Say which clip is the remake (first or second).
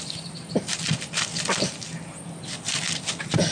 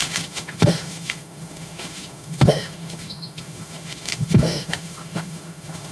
second